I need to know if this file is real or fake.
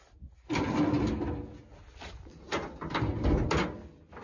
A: real